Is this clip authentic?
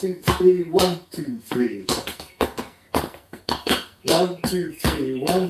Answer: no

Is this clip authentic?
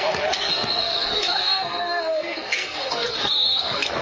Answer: no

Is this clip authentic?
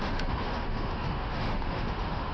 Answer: no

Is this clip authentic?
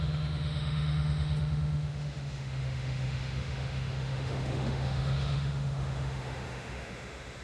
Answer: no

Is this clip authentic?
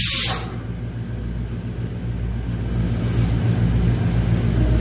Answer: yes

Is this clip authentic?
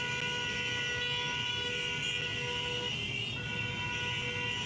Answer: yes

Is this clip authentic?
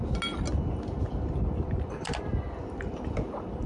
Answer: yes